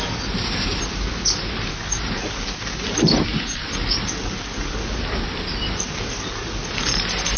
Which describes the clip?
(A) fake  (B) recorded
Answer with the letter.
B